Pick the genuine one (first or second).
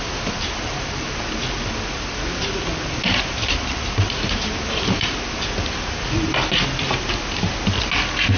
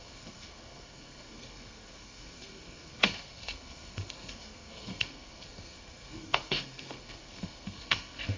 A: first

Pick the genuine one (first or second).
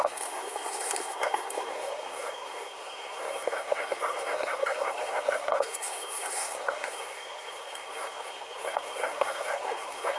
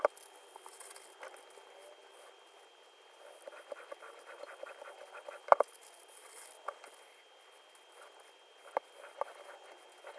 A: second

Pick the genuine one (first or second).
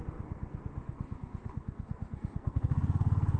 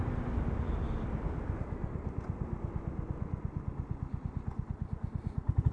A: second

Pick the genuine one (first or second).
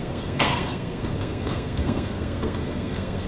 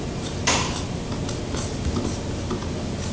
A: second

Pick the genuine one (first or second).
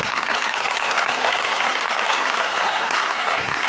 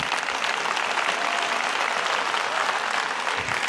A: second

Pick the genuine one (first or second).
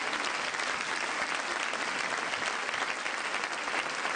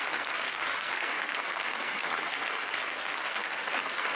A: first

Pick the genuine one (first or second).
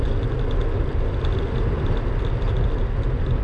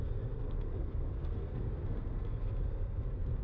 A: first